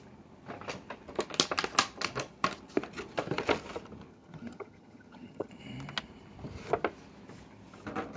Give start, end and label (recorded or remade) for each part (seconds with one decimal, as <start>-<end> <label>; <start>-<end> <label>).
0.0-4.1 recorded; 4.1-5.5 remade; 5.5-8.2 recorded